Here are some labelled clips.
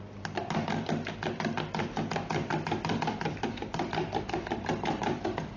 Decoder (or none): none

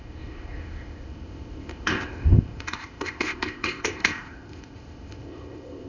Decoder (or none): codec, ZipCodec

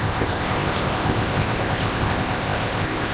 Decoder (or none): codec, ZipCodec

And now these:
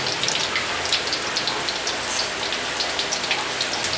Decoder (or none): none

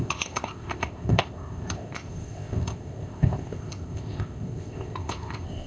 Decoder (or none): codec, ZipCodec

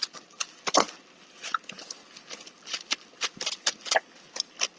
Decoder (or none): none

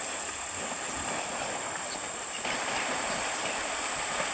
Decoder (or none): none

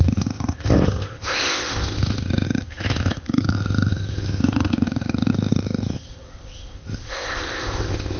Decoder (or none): codec, ZipCodec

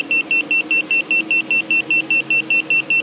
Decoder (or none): none